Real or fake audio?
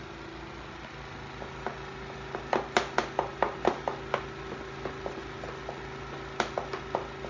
real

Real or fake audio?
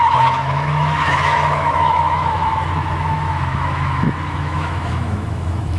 fake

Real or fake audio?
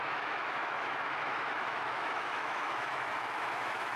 fake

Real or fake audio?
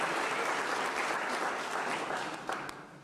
real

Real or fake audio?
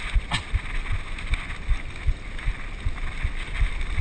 real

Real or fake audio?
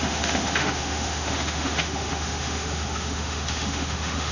fake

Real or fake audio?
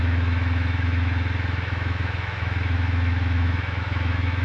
fake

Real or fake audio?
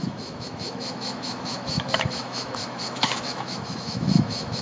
fake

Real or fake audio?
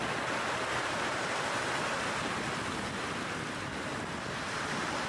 real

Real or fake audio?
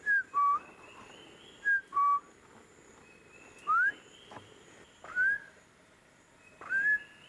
real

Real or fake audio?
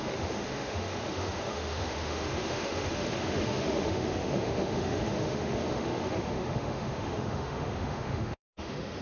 fake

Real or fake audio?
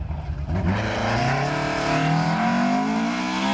real